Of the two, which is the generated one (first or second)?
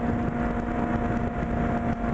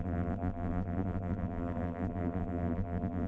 second